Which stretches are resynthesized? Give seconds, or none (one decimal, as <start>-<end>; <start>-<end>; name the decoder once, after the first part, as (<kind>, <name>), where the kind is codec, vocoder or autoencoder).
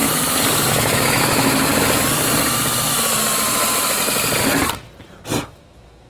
0.7-1.7 (autoencoder, DAC-VAE); 5.4-6.1